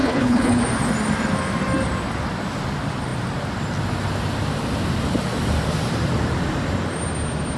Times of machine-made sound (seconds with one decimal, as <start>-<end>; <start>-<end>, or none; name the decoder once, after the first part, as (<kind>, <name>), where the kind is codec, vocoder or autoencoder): 0.0-0.6 (codec, HILCodec)